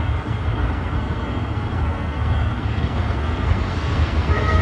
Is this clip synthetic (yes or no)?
yes